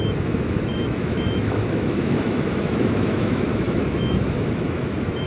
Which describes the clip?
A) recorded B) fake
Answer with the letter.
B